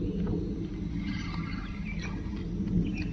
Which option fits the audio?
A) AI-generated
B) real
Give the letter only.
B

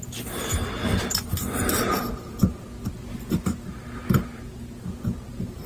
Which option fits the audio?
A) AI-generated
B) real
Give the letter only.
B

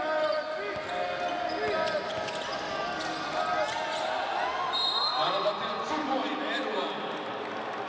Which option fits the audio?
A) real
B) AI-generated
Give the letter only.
A